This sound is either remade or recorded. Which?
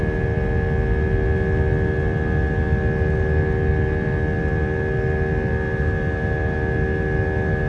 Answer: recorded